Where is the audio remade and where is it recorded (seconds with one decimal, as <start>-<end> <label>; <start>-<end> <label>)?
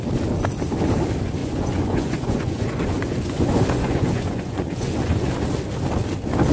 0.0-1.4 recorded; 1.4-5.3 remade; 5.3-6.5 recorded